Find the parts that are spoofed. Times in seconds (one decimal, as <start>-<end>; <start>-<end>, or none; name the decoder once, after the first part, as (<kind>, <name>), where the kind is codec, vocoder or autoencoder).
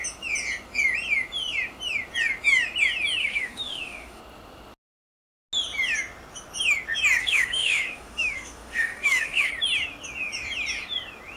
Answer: 3.2-4.2 (autoencoder, DAC-VAE); 7.2-9.5